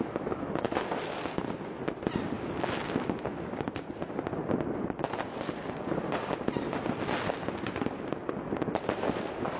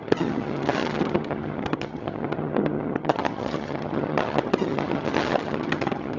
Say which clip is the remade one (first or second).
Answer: second